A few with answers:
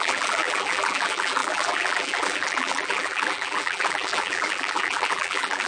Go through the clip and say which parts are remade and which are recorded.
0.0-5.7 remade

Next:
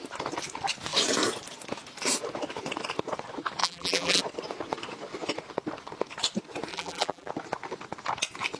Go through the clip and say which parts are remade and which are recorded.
0.0-3.6 recorded; 3.6-4.2 remade; 4.2-6.7 recorded; 6.7-7.3 remade; 7.3-8.6 recorded

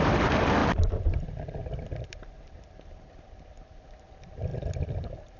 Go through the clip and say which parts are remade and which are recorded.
0.0-0.6 recorded; 0.6-3.8 remade; 3.8-4.5 recorded; 4.5-5.4 remade